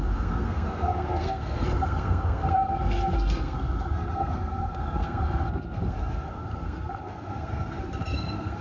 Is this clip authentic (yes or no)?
no